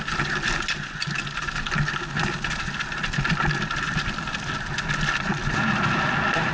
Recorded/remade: recorded